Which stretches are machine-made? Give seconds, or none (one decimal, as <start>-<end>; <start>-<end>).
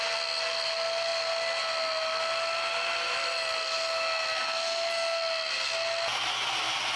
none